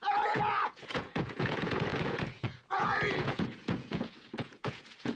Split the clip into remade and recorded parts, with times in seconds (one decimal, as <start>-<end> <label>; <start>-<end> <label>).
0.0-5.2 remade